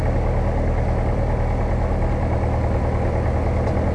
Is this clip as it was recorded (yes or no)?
yes